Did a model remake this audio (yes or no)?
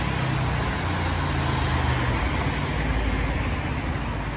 no